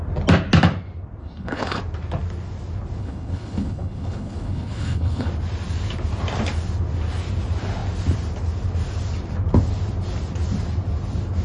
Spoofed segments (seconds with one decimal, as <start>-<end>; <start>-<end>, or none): 1.2-1.8; 3.0-5.3